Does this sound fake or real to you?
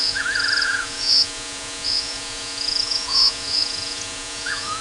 fake